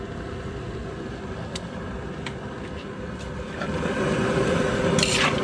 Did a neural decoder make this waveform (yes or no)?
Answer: yes